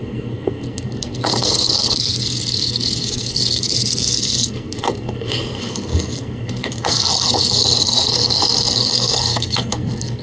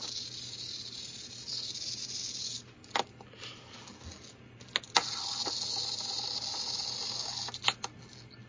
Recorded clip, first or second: second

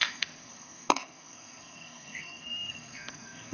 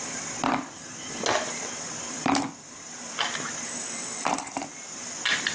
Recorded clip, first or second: second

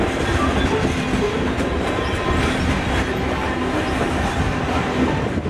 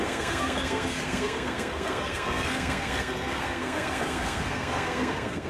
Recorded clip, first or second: first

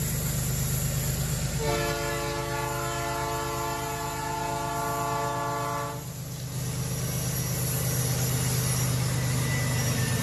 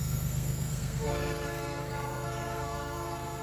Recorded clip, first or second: first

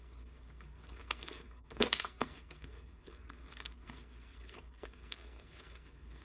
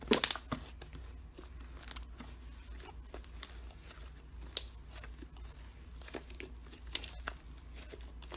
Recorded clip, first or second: second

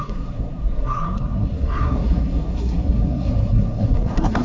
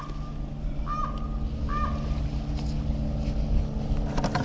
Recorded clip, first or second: second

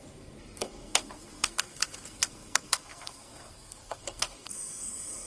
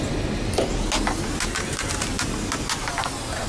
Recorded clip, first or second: second